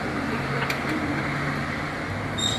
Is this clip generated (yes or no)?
no